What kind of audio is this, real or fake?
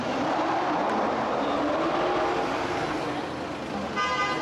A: real